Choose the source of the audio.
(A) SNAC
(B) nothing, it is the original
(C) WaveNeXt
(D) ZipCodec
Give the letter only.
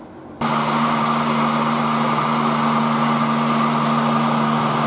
B